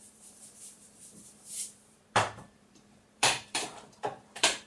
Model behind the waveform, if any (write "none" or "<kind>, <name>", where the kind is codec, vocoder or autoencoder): vocoder, BigVGAN v2